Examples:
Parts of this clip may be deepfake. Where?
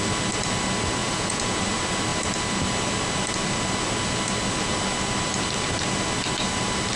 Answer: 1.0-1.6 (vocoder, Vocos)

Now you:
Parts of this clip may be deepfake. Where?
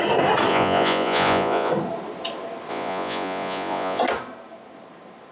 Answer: 0.5-1.7 (vocoder, Vocos); 2.7-4.0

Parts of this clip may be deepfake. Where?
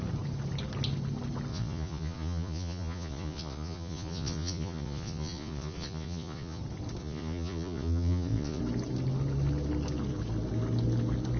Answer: 1.5-6.6 (vocoder, Vocos); 7.0-8.6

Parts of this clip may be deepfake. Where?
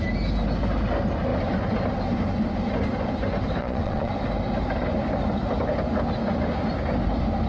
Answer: 3.6-4.1 (vocoder, Vocos)